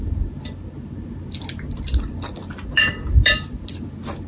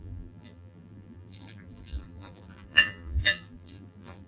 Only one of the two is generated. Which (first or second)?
second